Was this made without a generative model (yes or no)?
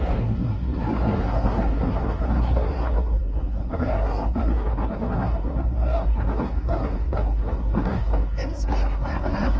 no